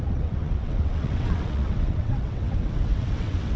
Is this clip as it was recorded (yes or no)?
no